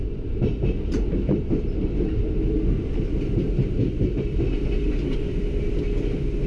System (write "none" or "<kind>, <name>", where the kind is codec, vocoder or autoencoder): none